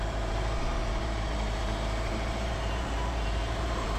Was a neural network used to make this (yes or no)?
yes